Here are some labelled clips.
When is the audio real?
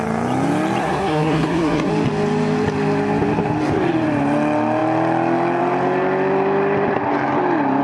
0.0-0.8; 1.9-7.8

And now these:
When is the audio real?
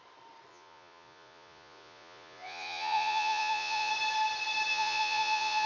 0.0-0.5; 3.9-4.7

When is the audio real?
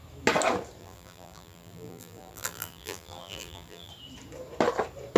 0.0-0.8; 3.9-5.2